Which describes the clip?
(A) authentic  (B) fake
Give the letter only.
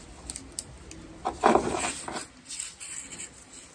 A